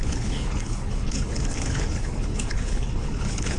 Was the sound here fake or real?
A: fake